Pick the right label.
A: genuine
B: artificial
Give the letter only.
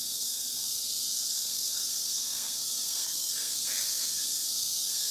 B